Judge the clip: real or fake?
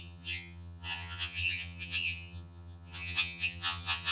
fake